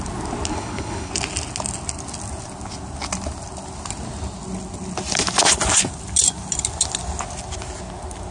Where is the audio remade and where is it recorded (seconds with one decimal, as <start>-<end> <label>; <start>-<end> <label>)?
0.0-0.5 recorded; 0.5-1.1 remade; 1.1-8.3 recorded